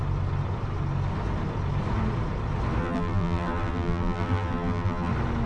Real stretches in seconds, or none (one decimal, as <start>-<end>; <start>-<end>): 0.0-2.8; 5.1-5.5

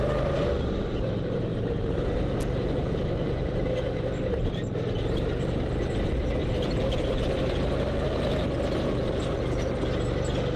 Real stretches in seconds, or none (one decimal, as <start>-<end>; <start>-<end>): 0.0-1.5; 4.5-6.4; 8.2-10.6

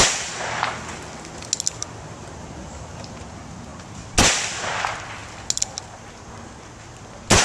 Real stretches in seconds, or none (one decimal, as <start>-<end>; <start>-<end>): 0.0-7.4

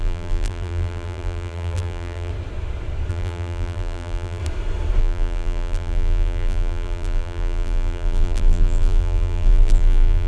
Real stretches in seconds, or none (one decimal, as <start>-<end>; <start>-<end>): 2.3-3.1; 4.4-5.0

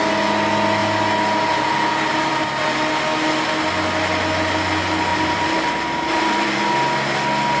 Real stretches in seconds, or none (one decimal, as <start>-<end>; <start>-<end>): 0.0-2.3; 2.9-5.1; 6.6-7.6

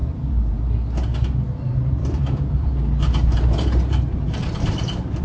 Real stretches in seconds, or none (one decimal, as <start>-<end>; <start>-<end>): 0.6-2.0

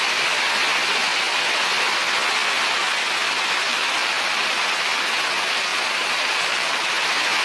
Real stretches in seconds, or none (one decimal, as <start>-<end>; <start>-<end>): 0.0-3.7; 4.6-5.7; 6.9-7.4